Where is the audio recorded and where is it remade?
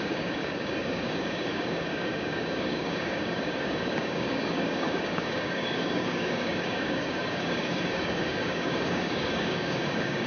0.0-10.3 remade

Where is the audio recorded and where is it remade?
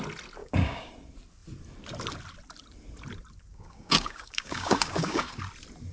0.0-0.4 recorded; 0.4-0.9 remade; 0.9-3.5 recorded; 3.5-5.4 remade; 5.4-5.9 recorded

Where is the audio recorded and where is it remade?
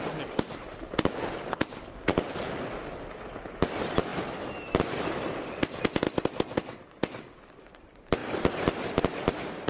0.0-9.7 recorded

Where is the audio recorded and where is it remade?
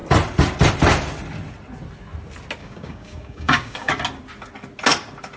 0.0-2.6 recorded; 2.6-3.9 remade; 3.9-5.4 recorded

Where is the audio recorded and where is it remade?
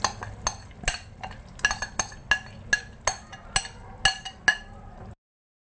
0.0-5.8 recorded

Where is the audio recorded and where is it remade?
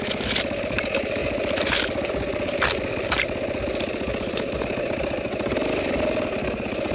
0.0-6.9 recorded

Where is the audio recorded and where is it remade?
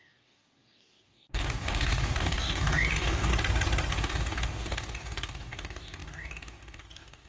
0.0-3.3 remade; 3.3-3.9 recorded; 3.9-7.3 remade